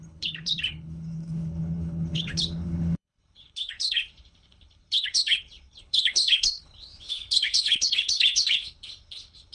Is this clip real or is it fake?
fake